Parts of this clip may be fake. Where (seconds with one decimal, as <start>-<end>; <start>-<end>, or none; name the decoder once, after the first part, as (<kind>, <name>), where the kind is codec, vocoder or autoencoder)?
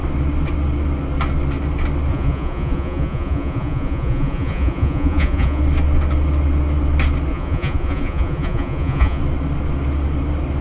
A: 2.1-5.6 (vocoder, Vocos); 7.3-9.2